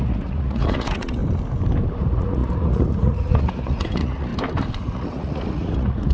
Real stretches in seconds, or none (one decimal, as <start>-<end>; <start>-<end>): 1.2-2.0; 4.3-4.8